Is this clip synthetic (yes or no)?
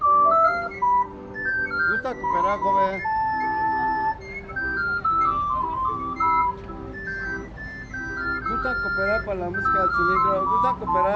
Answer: no